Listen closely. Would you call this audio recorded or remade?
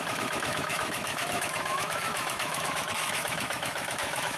remade